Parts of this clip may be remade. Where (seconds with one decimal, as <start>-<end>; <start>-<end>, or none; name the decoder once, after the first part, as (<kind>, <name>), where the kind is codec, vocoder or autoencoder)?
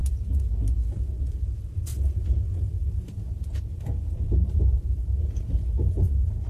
0.7-1.9 (vocoder, BigVGAN v2); 2.9-6.5